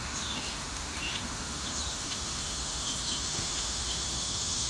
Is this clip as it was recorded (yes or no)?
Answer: no